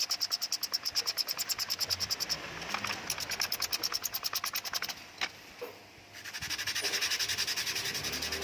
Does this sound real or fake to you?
real